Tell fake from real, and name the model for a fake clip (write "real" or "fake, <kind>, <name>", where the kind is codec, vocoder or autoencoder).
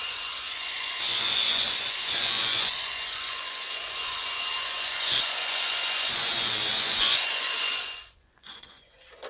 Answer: fake, vocoder, Vocos